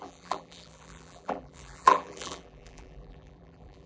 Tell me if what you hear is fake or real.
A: fake